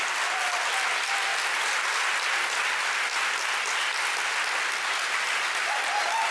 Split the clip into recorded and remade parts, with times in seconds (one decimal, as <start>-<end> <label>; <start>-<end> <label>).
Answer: 0.0-6.3 recorded